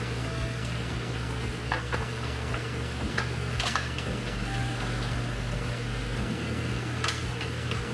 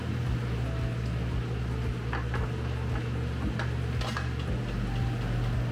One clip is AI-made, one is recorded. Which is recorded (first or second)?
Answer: second